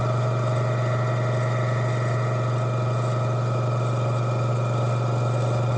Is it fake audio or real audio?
real